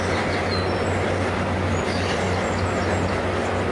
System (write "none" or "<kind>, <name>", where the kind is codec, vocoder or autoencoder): none